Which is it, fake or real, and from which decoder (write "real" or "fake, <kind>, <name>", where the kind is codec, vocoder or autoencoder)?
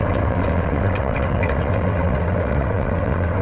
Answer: fake, vocoder, WaveNeXt